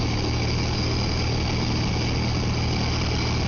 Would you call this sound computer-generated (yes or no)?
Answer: no